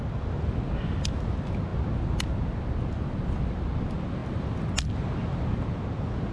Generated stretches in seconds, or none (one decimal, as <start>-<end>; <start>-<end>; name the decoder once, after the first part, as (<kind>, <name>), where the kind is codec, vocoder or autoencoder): none